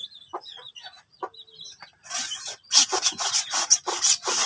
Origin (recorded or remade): recorded